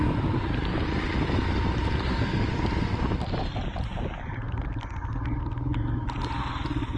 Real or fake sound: real